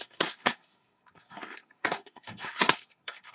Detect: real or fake fake